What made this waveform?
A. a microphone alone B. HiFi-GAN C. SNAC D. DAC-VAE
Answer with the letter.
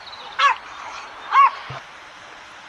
A